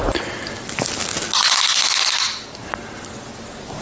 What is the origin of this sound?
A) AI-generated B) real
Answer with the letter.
B